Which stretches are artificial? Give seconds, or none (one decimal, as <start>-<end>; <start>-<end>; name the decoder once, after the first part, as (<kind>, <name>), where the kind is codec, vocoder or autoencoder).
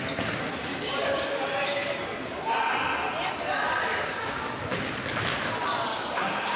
0.7-2.5 (codec, DAC); 3.9-4.5; 5.9-6.6